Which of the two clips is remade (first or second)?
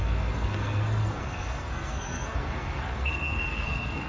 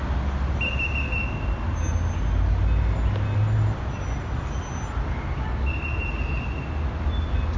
first